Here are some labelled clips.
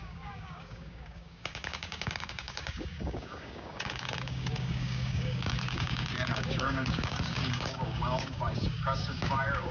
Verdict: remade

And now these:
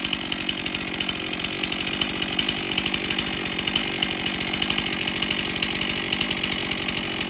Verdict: recorded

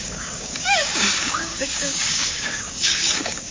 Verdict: remade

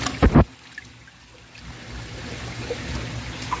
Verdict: recorded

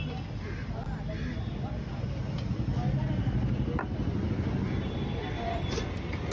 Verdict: recorded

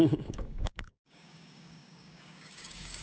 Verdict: remade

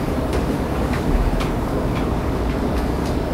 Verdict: remade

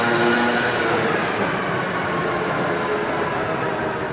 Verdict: recorded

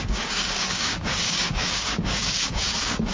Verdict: remade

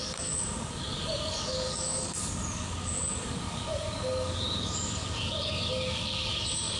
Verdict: remade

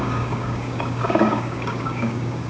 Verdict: remade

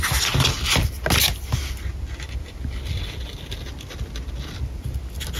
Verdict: recorded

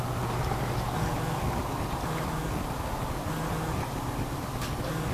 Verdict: recorded